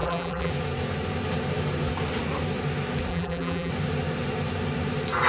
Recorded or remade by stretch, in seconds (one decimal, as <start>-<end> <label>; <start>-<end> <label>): 0.0-0.5 remade; 0.5-3.1 recorded; 3.1-3.7 remade; 3.7-5.3 recorded

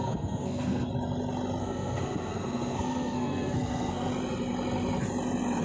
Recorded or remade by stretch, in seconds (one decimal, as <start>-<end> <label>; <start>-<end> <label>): 0.0-0.9 remade; 0.9-1.6 recorded; 1.6-4.1 remade; 4.1-5.6 recorded

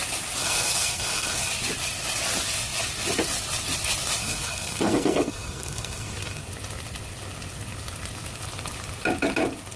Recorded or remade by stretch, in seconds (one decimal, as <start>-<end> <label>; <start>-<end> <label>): 0.0-0.4 recorded; 0.4-1.5 remade; 1.5-4.2 recorded; 4.2-6.5 remade; 6.5-9.8 recorded

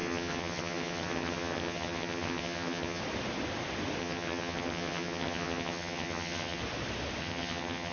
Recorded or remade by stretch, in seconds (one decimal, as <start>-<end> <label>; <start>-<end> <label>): 0.0-3.0 remade; 3.0-4.0 recorded; 4.0-6.6 remade; 6.6-7.2 recorded; 7.2-7.9 remade

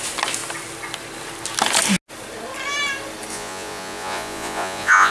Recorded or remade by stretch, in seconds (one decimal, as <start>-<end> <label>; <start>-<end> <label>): 0.0-3.3 recorded; 3.3-5.1 remade